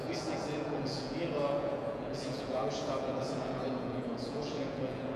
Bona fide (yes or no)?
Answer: no